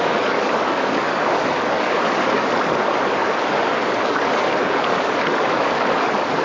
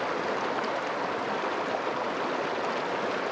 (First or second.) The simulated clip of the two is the first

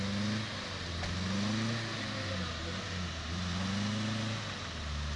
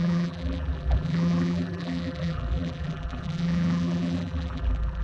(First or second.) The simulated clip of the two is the second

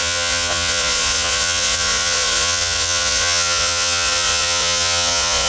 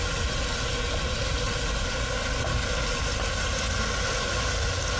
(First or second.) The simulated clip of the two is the first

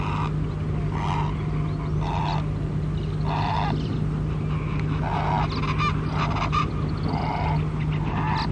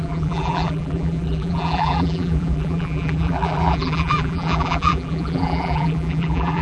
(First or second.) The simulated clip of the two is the second